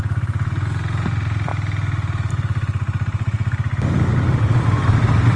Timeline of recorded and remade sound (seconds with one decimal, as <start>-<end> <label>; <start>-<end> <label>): 0.0-1.5 remade; 1.5-2.3 recorded; 2.3-3.7 remade; 3.7-4.4 recorded; 4.4-5.4 remade